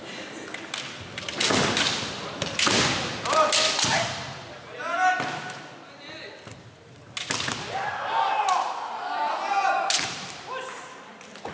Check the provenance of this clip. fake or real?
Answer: real